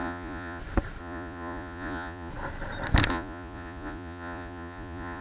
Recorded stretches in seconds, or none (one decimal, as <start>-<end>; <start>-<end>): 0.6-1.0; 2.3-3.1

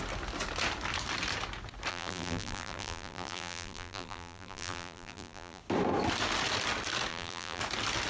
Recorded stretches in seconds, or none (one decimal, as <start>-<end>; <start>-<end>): 0.0-1.9; 5.6-7.1; 7.6-8.1

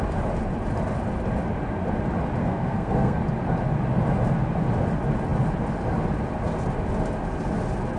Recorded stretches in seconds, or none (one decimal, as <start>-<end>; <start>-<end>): 0.0-2.4; 3.2-8.0

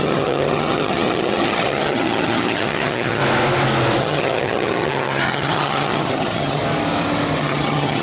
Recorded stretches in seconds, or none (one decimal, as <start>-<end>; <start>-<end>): 3.2-4.0; 6.6-7.4